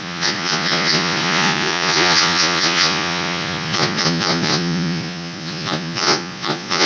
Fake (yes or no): yes